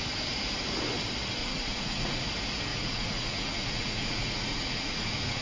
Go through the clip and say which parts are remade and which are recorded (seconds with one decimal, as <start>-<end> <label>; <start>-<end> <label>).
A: 0.0-1.4 recorded; 1.4-2.2 remade; 2.2-2.7 recorded; 2.7-5.4 remade